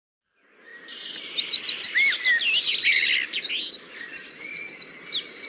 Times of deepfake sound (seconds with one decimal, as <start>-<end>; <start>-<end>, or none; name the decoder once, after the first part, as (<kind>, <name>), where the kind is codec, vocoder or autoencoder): none

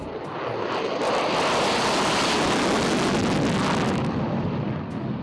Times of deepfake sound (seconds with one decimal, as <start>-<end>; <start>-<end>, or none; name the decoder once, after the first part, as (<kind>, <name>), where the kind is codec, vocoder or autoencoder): none

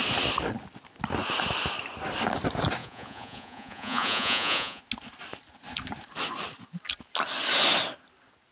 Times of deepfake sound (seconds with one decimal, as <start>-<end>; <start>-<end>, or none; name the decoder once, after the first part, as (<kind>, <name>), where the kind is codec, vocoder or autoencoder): 2.8-4.8 (vocoder, Vocos)

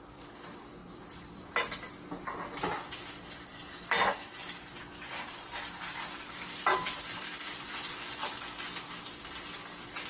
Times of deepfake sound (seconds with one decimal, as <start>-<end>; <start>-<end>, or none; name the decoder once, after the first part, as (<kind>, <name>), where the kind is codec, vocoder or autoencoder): 0.8-1.5 (vocoder, BigVGAN v2); 3.5-4.1; 6.7-7.5

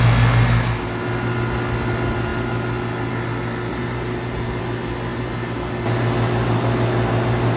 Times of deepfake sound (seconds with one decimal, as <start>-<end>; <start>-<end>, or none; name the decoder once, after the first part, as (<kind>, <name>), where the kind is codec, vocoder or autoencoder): 3.7-4.6 (vocoder, BigVGAN v2); 5.1-5.7

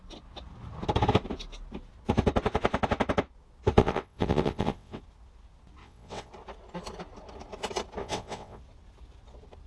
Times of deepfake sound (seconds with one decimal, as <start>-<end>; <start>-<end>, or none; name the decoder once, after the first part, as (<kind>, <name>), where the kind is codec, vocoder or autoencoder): 3.8-5.0 (vocoder, WaveNeXt); 5.8-6.3; 8.0-8.6

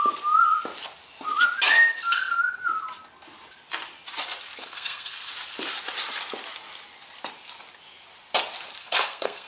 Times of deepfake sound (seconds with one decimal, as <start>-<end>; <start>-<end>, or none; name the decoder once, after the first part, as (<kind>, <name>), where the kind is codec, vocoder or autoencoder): 1.7-2.6 (codec, SNAC); 4.6-5.3; 8.8-9.5

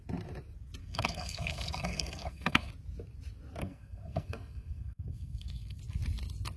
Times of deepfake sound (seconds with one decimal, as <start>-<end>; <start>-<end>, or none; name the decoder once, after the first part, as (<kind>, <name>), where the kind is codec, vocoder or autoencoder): 0.8-2.7 (codec, SNAC); 3.6-5.8